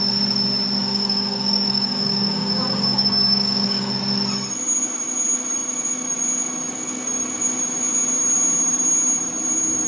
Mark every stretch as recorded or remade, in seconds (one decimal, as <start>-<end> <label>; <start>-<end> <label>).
0.0-0.8 recorded; 0.8-3.9 remade; 3.9-9.9 recorded